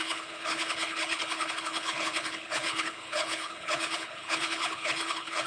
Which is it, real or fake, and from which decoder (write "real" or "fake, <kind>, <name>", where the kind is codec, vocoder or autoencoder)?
fake, codec, HILCodec